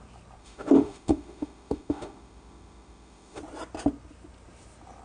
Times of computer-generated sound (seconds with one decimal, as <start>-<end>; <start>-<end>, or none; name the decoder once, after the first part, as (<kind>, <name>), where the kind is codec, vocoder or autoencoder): 0.4-3.4 (autoencoder, DAC-VAE)